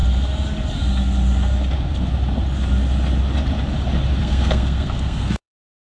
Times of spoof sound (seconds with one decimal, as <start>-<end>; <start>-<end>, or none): 4.2-5.9